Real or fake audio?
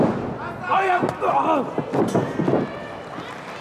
real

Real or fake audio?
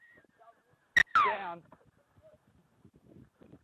real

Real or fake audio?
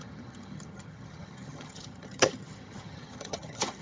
fake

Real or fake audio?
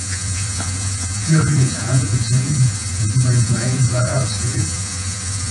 fake